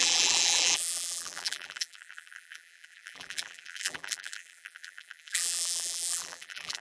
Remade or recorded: remade